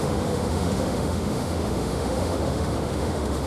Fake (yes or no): yes